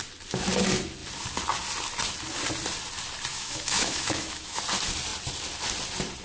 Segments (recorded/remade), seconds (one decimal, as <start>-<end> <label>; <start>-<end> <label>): 0.0-3.3 recorded; 3.3-4.6 remade; 4.6-6.2 recorded